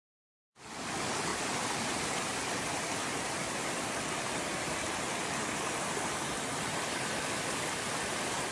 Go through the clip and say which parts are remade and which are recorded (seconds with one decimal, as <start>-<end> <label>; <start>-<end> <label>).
0.0-8.5 recorded